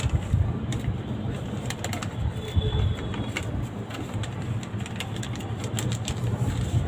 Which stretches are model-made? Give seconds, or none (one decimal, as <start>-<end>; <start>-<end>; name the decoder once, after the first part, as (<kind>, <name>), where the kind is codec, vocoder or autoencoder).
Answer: 3.1-3.9 (vocoder, BigVGAN v2)